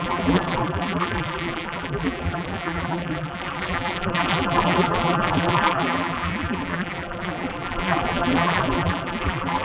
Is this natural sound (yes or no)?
no